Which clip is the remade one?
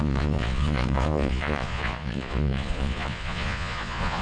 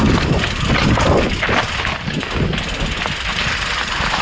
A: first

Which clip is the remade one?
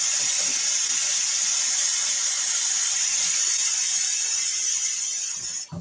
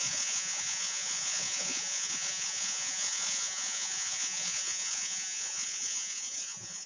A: second